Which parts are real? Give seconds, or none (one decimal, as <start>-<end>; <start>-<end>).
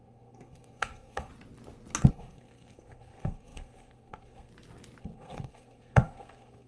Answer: 1.3-2.1; 4.5-5.0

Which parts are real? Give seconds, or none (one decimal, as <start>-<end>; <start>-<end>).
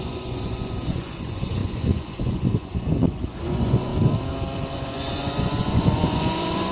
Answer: 3.9-4.7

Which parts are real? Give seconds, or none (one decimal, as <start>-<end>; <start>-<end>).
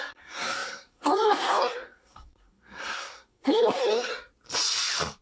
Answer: 4.1-5.2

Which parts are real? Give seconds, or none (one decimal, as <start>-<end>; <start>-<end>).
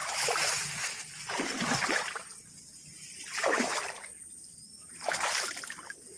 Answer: 0.0-6.2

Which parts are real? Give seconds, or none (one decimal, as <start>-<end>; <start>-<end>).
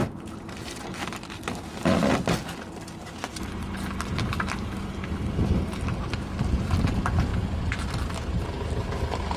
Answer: 0.8-9.4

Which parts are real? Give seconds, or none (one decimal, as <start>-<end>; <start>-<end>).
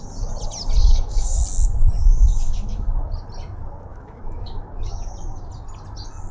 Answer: 0.0-0.8; 1.4-2.0; 2.9-3.9; 5.1-6.3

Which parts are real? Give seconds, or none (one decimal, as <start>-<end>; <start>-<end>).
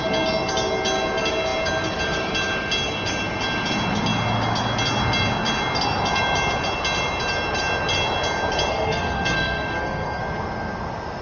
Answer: 0.0-8.7; 10.2-11.2